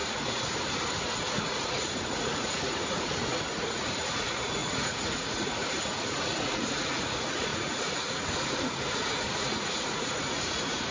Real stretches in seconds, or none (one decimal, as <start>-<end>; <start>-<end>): none